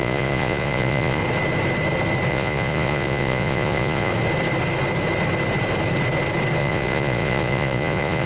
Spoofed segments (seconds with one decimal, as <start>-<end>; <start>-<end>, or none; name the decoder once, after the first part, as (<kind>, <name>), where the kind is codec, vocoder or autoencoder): 0.0-1.2 (vocoder, Vocos); 2.3-4.1; 6.6-8.3